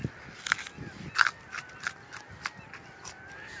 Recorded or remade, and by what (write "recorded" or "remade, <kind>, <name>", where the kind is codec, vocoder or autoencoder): recorded